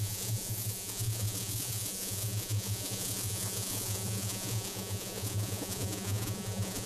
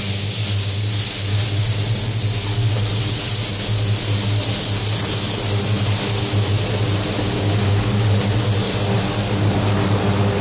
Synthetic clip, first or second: first